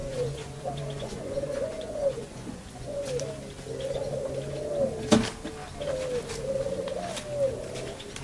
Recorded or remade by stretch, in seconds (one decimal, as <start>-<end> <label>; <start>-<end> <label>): 0.0-3.1 remade; 3.1-8.2 recorded